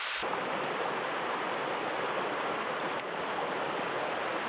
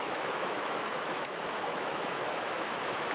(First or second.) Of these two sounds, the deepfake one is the second